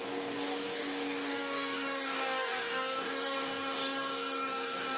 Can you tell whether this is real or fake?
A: fake